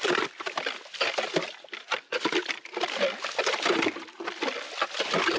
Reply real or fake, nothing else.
real